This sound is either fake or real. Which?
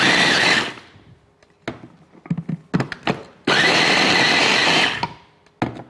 real